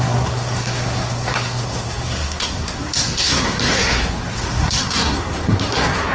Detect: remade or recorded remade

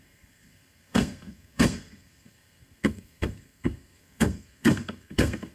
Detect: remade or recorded remade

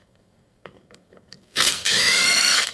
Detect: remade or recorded remade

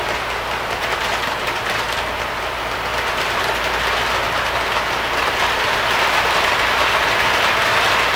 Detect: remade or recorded recorded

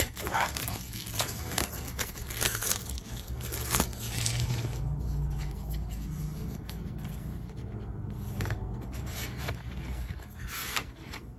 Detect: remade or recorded remade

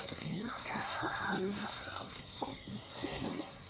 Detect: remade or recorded remade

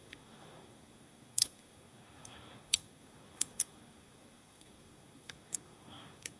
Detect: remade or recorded remade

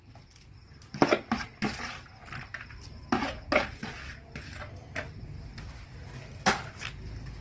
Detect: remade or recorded recorded